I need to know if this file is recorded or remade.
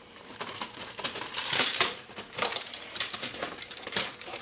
remade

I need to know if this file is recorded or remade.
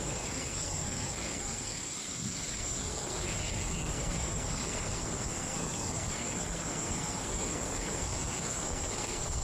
remade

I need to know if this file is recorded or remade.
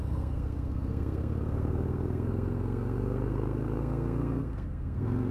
remade